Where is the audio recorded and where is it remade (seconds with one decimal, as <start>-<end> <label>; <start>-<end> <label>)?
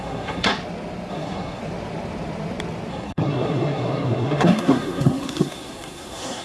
0.0-0.5 remade; 0.5-1.1 recorded; 1.1-1.6 remade; 1.6-2.9 recorded; 2.9-6.4 remade